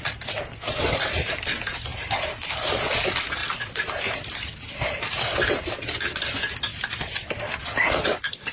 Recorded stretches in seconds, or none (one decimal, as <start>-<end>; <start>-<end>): 0.0-8.5